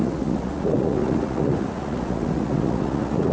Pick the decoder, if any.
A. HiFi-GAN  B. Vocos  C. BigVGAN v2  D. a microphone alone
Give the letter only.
B